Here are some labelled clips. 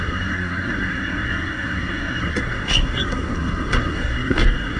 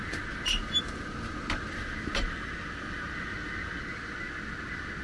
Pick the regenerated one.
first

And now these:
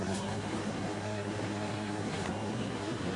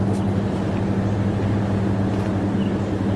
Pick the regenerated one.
first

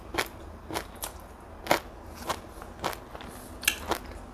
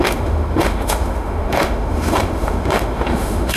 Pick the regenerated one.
second